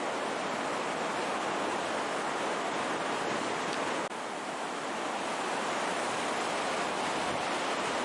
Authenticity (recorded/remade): recorded